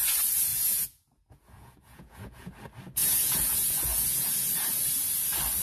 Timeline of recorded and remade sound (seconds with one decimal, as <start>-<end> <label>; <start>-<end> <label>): 0.0-0.5 recorded; 0.5-2.5 remade; 2.5-3.0 recorded; 3.0-4.3 remade; 4.3-5.6 recorded